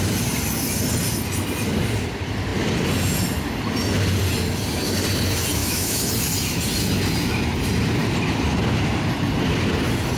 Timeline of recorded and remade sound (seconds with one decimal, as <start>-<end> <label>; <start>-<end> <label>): 0.0-5.6 recorded; 5.6-6.1 remade; 6.1-10.2 recorded